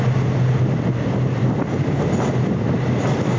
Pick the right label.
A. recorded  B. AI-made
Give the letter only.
A